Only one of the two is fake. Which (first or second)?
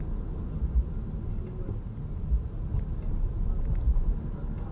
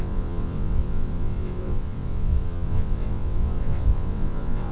second